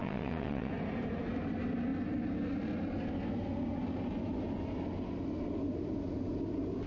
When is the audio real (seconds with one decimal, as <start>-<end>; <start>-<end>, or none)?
0.7-6.9